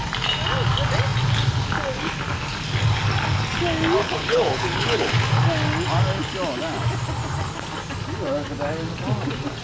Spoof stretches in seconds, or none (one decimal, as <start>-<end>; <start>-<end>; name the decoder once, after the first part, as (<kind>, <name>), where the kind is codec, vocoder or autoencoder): 4.0-5.1 (codec, HILCodec)